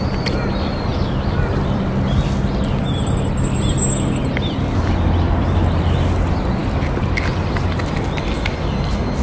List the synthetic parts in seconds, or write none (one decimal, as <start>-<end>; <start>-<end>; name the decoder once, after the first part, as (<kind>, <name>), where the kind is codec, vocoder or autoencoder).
none